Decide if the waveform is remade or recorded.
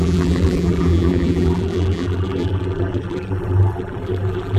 remade